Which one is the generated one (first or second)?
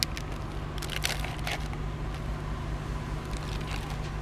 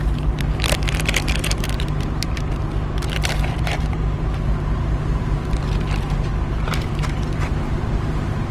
second